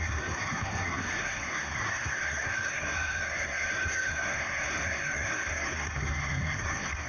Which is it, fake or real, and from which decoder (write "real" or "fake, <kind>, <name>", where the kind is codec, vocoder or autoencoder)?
fake, codec, SNAC